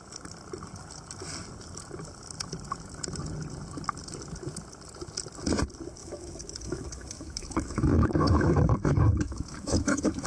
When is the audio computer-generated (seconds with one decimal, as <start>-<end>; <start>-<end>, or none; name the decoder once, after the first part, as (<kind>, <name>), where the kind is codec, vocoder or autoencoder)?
6.0-10.3 (autoencoder, DAC-VAE)